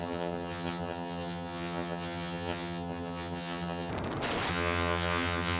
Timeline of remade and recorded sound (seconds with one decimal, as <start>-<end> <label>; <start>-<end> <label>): 0.0-3.9 remade; 3.9-4.5 recorded; 4.5-5.6 remade